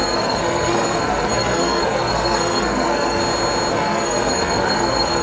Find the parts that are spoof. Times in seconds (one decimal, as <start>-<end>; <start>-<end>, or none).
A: 0.0-3.2; 3.7-5.2